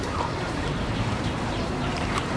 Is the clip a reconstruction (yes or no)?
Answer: yes